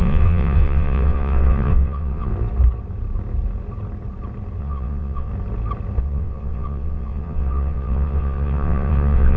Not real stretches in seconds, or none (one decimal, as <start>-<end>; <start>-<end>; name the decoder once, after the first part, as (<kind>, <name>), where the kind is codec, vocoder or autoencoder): 0.0-2.3 (vocoder, WaveNeXt); 4.6-5.3; 6.0-9.4